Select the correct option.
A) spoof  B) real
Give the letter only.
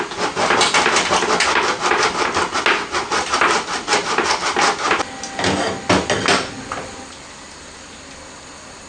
B